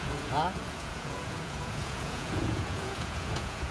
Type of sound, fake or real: fake